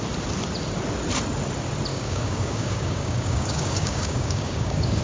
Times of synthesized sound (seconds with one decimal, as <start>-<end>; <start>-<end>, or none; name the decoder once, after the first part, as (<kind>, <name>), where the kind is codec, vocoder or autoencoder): 1.9-5.0 (codec, DAC)